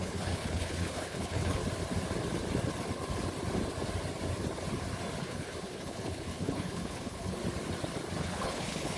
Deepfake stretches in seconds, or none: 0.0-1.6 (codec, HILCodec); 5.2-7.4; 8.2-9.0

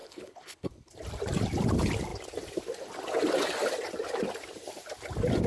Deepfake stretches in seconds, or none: 0.0-0.9 (codec, HILCodec)

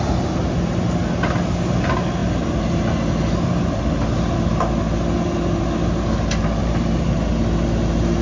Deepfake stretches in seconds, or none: none

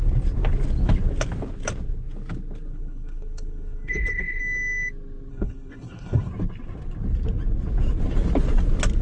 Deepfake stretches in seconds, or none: 2.7-4.4 (codec, HILCodec); 5.3-6.3

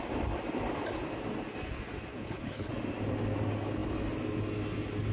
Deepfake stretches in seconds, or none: 2.1-2.7 (codec, HILCodec)

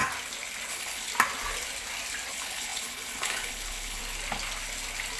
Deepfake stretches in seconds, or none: 0.7-1.1 (codec, HILCodec); 2.3-4.0